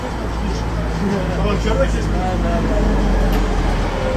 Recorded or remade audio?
recorded